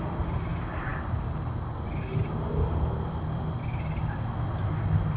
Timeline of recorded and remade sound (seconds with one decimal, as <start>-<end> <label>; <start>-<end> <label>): 0.0-5.2 recorded